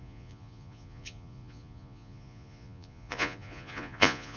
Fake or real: fake